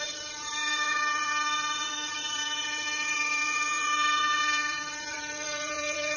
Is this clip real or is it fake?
fake